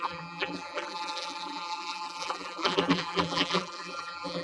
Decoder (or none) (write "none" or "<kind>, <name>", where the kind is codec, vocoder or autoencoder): vocoder, BigVGAN v2